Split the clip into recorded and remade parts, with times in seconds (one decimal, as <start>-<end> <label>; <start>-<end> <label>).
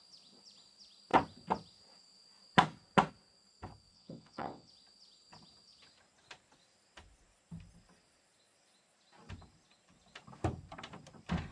0.0-3.9 recorded; 3.9-4.7 remade; 4.7-11.5 recorded